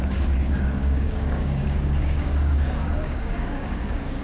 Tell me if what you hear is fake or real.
fake